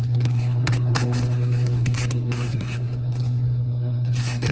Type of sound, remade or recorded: remade